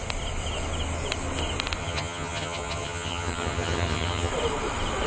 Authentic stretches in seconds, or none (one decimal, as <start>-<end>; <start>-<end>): 0.0-1.8; 4.3-5.1

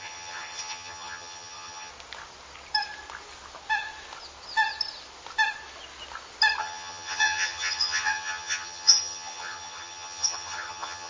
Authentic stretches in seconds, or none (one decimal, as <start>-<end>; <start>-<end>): 1.9-6.6

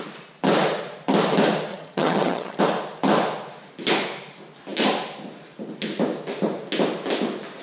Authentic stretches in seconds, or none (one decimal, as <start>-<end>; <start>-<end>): 0.0-1.7; 2.6-7.6

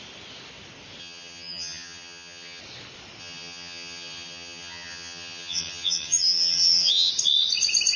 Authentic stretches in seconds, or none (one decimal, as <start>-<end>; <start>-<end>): 0.0-1.0; 2.6-3.2; 7.1-8.0

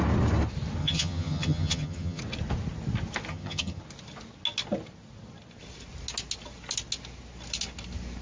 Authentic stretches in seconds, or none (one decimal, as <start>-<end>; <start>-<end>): 0.0-0.8; 2.2-3.3; 3.8-8.2

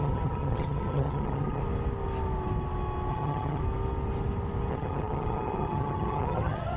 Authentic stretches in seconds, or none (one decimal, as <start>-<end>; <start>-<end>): 1.6-3.1; 3.6-4.7